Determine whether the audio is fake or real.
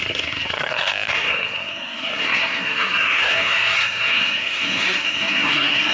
fake